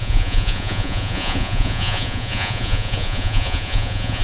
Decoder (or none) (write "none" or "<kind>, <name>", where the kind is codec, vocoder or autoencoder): vocoder, Vocos